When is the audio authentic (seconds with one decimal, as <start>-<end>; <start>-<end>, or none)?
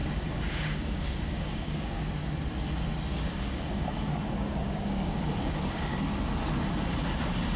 2.0-3.1; 6.1-7.6